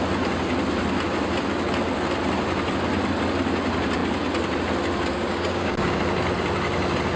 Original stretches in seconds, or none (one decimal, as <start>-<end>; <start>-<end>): 0.0-5.1; 6.0-7.2

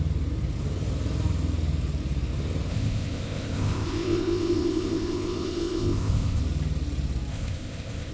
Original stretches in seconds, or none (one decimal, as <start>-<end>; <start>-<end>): 0.0-2.7; 6.4-7.3

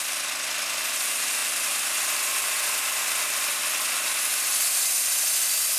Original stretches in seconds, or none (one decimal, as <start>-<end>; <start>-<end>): 0.0-5.8

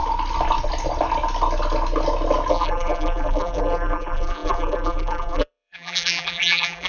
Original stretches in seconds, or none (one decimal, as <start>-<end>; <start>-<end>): 0.0-2.5

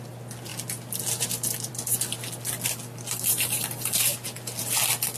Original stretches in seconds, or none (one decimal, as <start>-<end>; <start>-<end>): 0.0-5.2

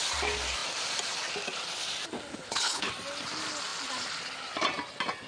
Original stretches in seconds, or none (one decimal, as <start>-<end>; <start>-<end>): 0.0-2.3; 2.9-5.3

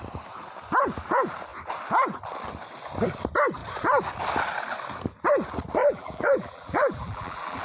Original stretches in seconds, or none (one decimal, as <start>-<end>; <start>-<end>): 0.0-5.8